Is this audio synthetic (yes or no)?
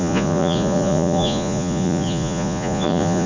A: yes